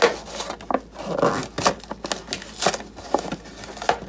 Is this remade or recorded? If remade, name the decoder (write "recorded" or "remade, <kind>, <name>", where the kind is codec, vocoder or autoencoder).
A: recorded